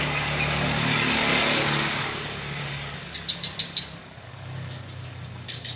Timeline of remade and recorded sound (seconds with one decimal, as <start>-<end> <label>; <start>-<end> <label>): 0.0-1.3 remade; 1.3-2.0 recorded; 2.0-5.8 remade